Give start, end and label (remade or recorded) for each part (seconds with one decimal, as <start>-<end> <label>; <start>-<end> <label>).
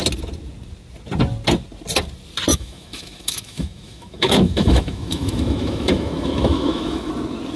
0.0-2.5 recorded; 2.5-7.1 remade; 7.1-7.6 recorded